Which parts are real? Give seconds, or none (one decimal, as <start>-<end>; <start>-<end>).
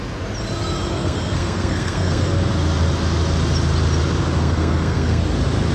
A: 0.0-0.9; 2.3-4.4; 5.2-5.7